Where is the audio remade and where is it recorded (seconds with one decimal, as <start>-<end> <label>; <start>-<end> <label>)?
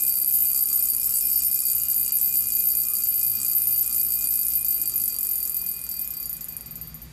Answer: 0.0-7.1 recorded